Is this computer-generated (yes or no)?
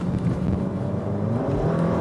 no